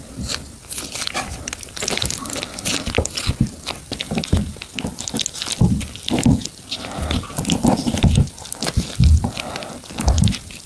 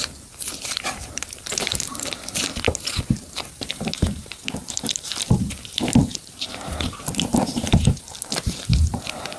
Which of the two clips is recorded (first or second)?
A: first